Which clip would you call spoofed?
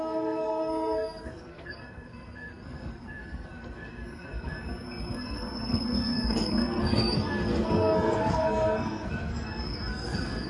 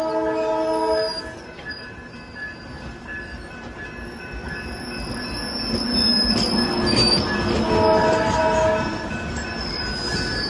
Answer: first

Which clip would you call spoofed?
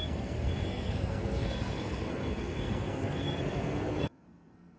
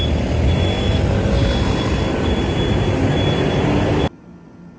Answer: first